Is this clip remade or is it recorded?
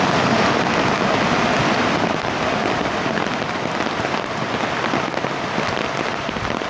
recorded